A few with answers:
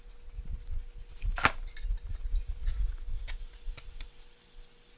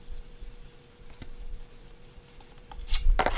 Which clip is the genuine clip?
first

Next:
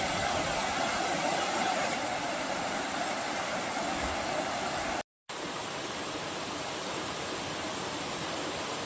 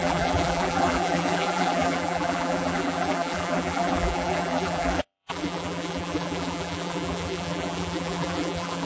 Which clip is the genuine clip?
first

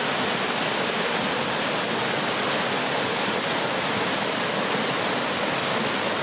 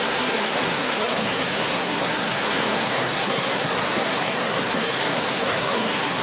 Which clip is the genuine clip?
first